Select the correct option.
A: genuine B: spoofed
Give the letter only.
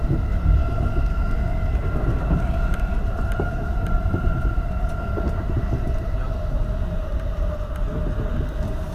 A